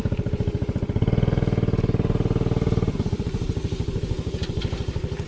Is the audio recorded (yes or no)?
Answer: yes